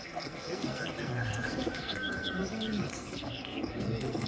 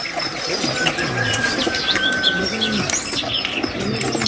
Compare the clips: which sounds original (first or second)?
second